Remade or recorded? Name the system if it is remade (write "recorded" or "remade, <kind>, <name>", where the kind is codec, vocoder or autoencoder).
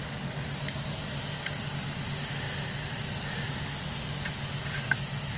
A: recorded